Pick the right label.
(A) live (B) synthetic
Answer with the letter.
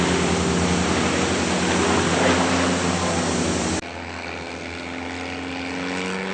A